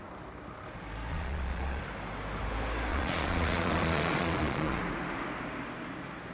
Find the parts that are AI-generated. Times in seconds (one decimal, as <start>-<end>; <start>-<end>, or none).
1.1-1.8; 2.9-4.8